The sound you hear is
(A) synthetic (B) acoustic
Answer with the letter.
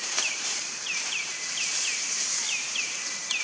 A